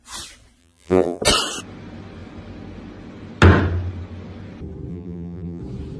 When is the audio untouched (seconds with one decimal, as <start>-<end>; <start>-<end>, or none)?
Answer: 0.0-0.6; 1.2-4.9; 5.6-6.0

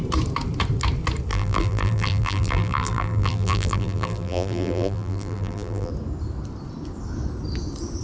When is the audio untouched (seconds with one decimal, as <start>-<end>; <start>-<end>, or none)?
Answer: 0.0-1.3; 5.9-8.0